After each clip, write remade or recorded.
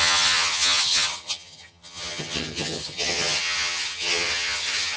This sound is remade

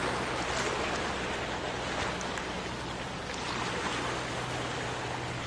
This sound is recorded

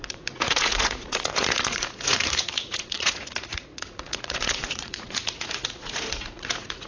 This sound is remade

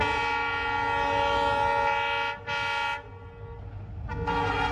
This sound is recorded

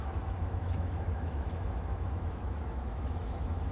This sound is remade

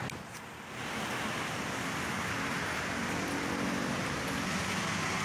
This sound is recorded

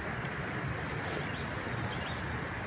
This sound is recorded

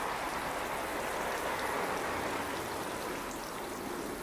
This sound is recorded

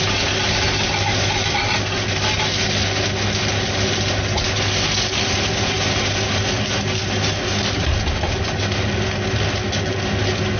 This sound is recorded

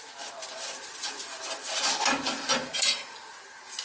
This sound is recorded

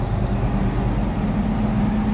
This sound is recorded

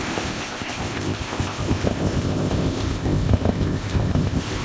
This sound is remade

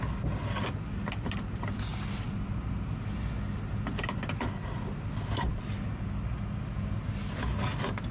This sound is recorded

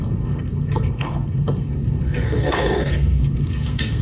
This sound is remade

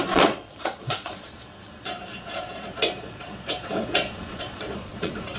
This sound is remade